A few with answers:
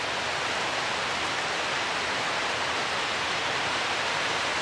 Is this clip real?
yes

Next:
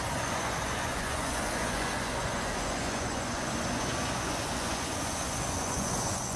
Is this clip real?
no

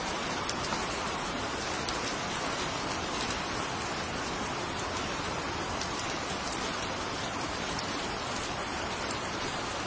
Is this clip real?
yes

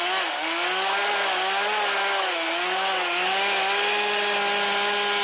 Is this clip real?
yes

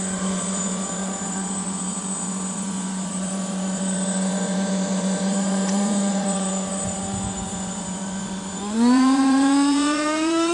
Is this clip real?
no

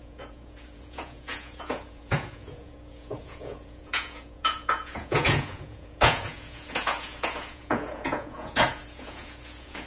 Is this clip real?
no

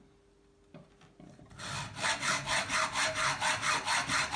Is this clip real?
yes